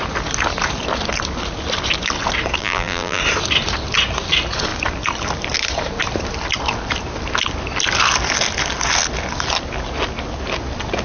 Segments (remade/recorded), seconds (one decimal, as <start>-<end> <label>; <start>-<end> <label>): 0.0-2.6 recorded; 2.6-3.2 remade; 3.2-11.0 recorded